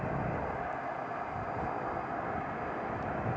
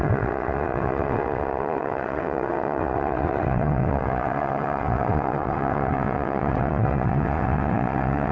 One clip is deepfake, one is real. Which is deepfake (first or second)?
second